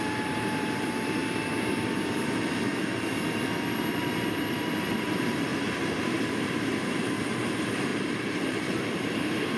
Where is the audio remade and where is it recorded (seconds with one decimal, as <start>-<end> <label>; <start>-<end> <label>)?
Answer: 0.0-1.2 remade; 1.2-3.8 recorded; 3.8-5.5 remade; 5.5-6.0 recorded; 6.0-7.9 remade; 7.9-8.4 recorded; 8.4-9.6 remade